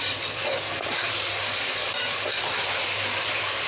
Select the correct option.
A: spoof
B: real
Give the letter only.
B